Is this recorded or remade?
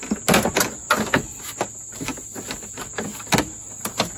recorded